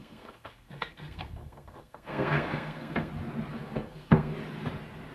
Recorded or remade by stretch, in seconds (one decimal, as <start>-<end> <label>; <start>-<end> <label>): 0.0-3.1 remade; 3.1-3.5 recorded; 3.5-4.3 remade; 4.3-5.1 recorded

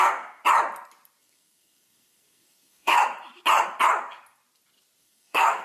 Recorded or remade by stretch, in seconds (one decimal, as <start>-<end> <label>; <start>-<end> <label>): 0.0-0.4 remade; 0.4-1.2 recorded; 1.2-3.0 remade; 3.0-5.0 recorded; 5.0-5.6 remade